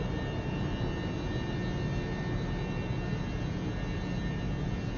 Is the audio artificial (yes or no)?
no